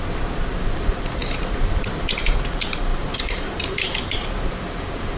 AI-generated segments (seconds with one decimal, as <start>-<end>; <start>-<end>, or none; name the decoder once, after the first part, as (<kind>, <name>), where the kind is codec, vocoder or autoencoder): 1.2-1.8 (vocoder, BigVGAN v2); 2.9-4.5